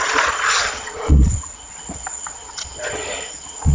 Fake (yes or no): yes